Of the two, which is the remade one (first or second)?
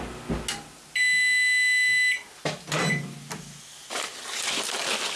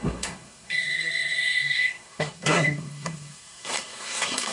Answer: second